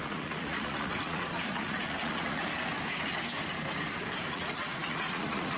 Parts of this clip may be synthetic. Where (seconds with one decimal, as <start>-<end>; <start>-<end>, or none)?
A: 0.0-2.4; 4.3-5.6